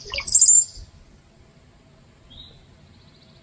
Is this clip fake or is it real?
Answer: real